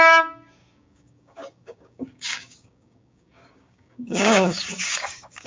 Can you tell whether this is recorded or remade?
remade